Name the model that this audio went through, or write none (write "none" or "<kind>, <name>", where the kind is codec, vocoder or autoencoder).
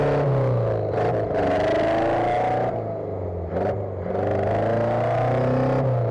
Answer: none